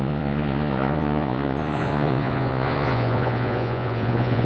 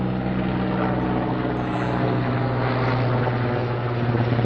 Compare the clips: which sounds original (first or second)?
second